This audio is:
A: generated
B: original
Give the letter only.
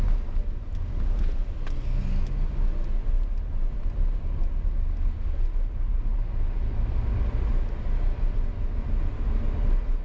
B